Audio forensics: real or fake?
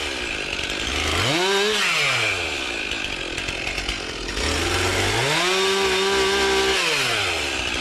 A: real